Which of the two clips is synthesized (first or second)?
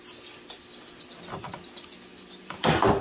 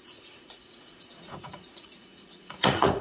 second